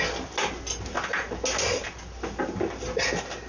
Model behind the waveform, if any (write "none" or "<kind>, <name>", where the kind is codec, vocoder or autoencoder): none